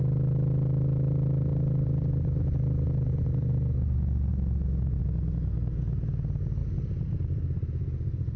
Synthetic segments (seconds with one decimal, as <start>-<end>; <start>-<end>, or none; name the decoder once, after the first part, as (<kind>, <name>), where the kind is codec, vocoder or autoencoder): none